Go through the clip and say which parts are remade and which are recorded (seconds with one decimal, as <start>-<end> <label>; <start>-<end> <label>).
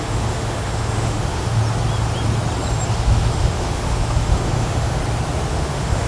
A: 0.0-1.6 remade; 1.6-2.9 recorded; 2.9-5.0 remade; 5.0-5.5 recorded; 5.5-6.1 remade